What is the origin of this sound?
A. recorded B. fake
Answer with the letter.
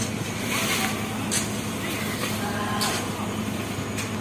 A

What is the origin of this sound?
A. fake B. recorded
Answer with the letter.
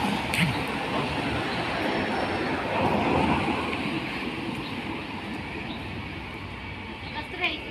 B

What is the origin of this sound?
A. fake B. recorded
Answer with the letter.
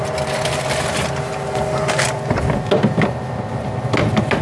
B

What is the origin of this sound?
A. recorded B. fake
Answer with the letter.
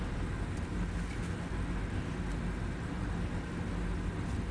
A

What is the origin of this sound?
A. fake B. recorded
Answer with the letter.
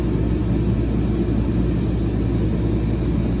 B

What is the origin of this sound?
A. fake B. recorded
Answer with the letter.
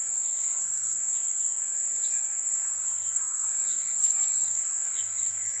A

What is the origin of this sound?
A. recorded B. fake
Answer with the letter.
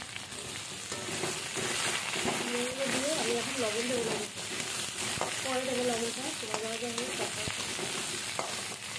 A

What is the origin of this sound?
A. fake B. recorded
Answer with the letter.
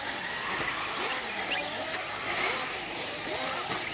B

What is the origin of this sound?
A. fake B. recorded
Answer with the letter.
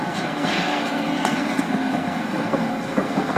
A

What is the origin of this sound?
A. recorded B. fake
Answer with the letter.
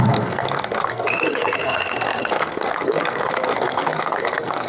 B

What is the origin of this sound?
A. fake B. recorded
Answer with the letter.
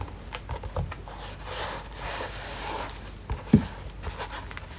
B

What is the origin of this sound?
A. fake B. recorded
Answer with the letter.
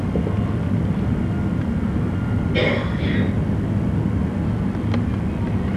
B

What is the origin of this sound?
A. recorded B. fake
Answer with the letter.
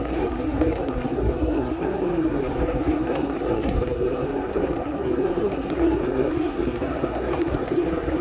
B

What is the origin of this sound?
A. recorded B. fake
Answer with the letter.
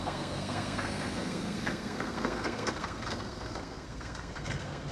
B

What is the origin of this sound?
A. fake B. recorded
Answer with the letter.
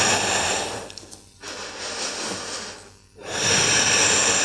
B